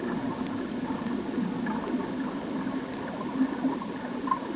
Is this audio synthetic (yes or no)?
no